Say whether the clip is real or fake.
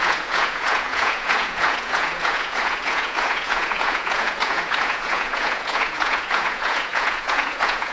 fake